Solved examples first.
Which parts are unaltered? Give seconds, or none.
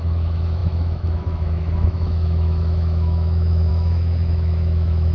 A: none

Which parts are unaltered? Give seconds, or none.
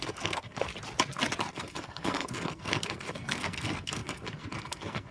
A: 0.7-1.5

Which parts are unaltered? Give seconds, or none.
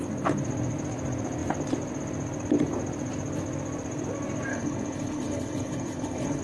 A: 0.0-4.5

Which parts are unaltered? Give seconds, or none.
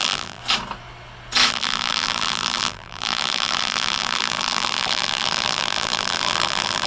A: 0.4-1.5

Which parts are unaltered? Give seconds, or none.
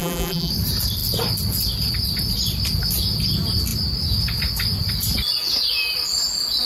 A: 0.5-6.7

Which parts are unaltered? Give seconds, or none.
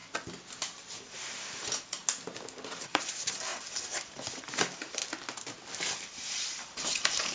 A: 0.0-1.0; 2.0-2.8; 5.0-5.9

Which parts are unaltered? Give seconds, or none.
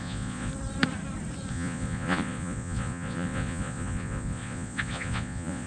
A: 0.5-1.5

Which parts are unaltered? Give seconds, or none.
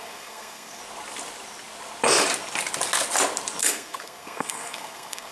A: 0.8-3.6